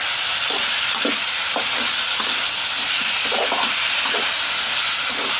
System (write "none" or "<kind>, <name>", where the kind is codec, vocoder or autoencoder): none